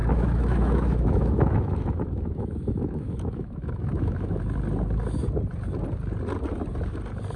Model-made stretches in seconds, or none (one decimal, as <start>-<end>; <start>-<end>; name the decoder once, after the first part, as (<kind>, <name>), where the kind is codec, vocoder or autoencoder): 0.0-4.4 (autoencoder, DAC-VAE)